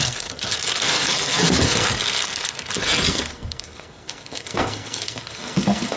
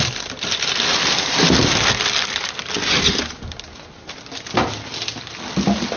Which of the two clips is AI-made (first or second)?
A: first